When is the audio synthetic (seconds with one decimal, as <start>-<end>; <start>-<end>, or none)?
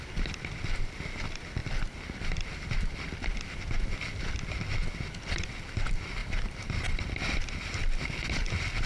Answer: 6.2-7.0